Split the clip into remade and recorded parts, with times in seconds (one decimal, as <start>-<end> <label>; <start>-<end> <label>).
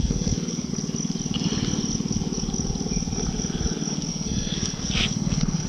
0.0-0.7 remade; 0.7-4.1 recorded; 4.1-5.7 remade